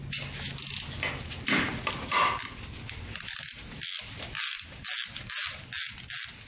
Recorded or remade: recorded